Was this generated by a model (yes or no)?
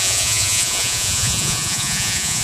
yes